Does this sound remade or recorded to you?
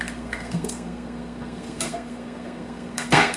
remade